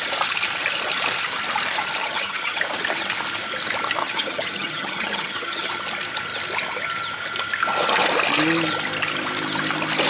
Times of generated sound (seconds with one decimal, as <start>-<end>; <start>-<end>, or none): 2.0-2.6; 4.0-5.7